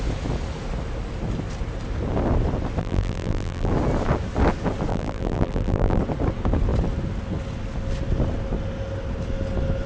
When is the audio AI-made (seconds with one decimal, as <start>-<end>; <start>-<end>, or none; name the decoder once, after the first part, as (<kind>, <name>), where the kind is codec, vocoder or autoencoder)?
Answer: 2.8-3.7 (vocoder, BigVGAN v2); 4.9-6.0